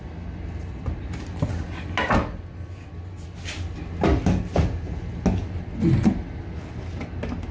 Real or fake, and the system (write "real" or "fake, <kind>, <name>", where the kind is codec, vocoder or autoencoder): real